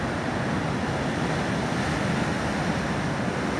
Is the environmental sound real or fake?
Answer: real